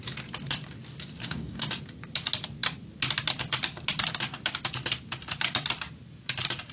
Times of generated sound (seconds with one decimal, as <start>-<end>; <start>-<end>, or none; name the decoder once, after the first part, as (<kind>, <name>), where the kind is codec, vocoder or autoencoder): 1.2-1.7 (codec, DAC)